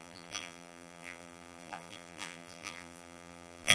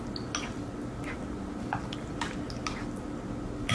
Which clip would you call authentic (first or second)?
second